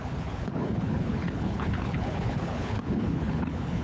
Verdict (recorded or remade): remade